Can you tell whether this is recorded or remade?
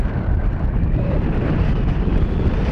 recorded